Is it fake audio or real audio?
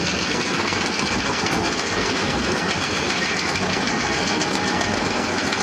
fake